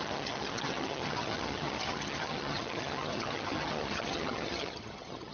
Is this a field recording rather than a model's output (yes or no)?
no